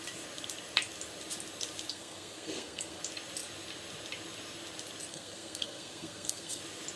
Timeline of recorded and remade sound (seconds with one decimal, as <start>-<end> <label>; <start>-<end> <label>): 0.0-1.9 recorded; 1.9-3.0 remade; 3.0-5.1 recorded; 5.1-6.6 remade; 6.6-7.0 recorded